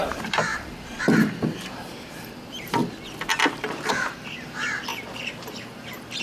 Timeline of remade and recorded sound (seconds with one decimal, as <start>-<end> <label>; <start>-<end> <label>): 0.0-2.8 remade; 2.8-3.9 recorded; 3.9-4.9 remade; 4.9-6.2 recorded